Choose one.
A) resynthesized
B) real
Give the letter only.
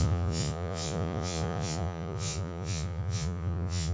A